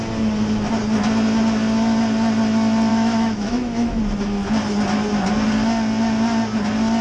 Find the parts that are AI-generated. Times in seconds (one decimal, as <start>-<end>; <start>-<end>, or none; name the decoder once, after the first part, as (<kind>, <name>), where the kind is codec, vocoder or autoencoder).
2.9-4.0 (autoencoder, DAC-VAE)